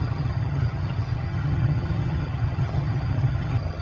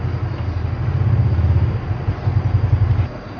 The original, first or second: second